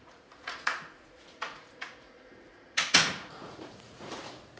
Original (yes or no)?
no